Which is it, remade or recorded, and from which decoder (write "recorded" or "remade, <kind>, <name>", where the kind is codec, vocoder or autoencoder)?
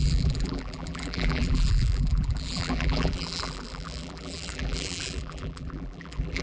remade, vocoder, BigVGAN v2